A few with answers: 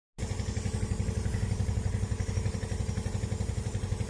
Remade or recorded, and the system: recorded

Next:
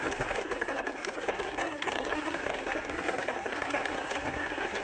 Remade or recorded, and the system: remade, codec, SNAC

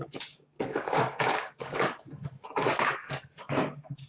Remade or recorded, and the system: remade, codec, DAC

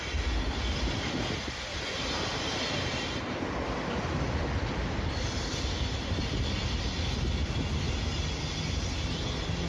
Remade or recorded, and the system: recorded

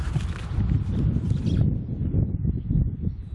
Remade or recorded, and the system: recorded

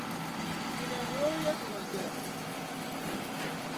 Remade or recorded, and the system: recorded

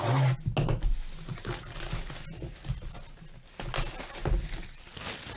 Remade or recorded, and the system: recorded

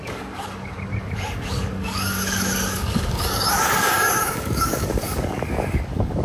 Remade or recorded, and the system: remade, codec, DAC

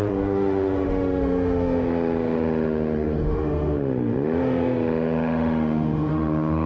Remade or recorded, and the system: remade, autoencoder, DAC-VAE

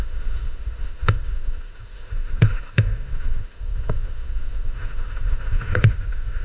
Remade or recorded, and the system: remade, autoencoder, DAC-VAE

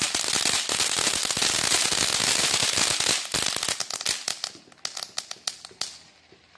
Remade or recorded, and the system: recorded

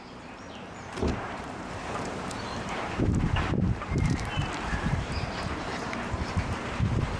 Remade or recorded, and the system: remade, vocoder, BigVGAN v2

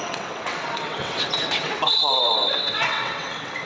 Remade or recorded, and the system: remade, vocoder, WaveNeXt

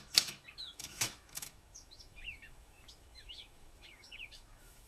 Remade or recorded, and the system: remade, autoencoder, DAC-VAE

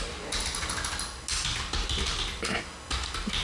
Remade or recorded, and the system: recorded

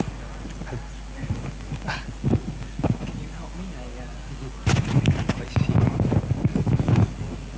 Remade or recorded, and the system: recorded